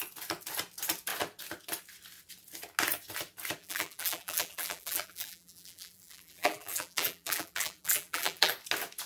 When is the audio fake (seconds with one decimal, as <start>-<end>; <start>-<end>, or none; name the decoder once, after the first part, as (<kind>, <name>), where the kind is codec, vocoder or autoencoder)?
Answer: 3.6-8.5 (vocoder, BigVGAN v2)